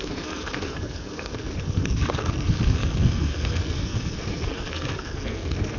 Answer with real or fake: fake